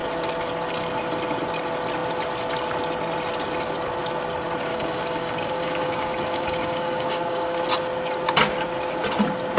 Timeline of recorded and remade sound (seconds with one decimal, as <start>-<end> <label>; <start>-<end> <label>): 0.0-4.7 recorded; 4.7-7.6 remade; 7.6-9.6 recorded